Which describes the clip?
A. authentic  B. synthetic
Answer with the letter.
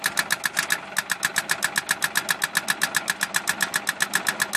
A